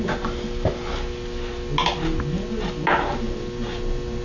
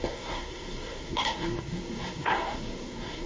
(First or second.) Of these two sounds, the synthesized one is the second